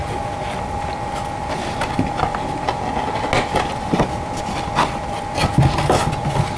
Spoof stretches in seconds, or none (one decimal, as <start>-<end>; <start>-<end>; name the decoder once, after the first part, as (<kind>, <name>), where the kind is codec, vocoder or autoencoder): none